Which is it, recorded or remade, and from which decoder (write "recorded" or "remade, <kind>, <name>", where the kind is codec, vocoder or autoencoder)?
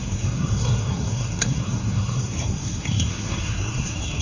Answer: remade, codec, SNAC